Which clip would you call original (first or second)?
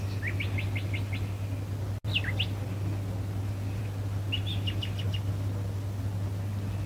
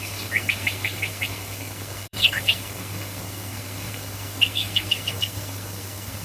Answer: first